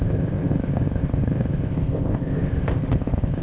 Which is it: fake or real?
fake